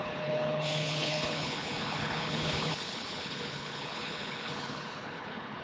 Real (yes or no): no